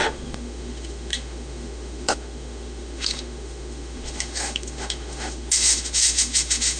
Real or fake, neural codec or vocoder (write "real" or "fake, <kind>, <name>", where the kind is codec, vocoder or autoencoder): fake, autoencoder, DAC-VAE